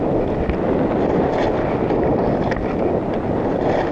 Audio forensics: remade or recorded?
recorded